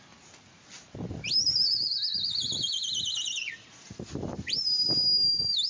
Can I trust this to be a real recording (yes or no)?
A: yes